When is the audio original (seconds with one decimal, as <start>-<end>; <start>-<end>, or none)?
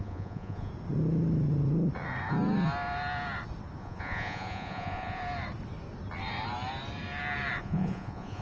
0.7-3.8; 5.2-7.6